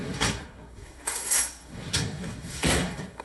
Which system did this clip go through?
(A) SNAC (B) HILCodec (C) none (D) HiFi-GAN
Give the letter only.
A